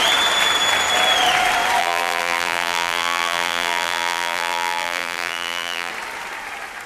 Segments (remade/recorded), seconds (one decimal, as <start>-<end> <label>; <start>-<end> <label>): 0.0-1.8 recorded; 1.8-5.9 remade; 5.9-6.9 recorded